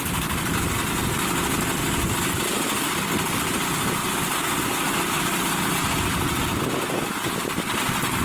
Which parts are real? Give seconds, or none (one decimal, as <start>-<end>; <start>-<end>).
0.0-8.2